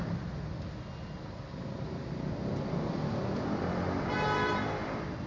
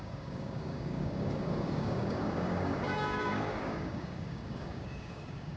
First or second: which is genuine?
first